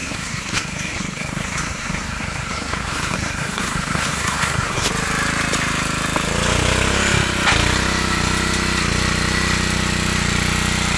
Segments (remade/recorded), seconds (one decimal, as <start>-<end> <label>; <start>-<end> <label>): 0.0-4.9 remade; 4.9-11.0 recorded